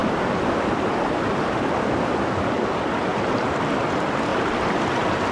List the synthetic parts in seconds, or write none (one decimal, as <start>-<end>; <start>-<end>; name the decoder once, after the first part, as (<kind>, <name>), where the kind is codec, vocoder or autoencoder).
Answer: 0.0-2.0 (vocoder, BigVGAN v2); 3.1-3.9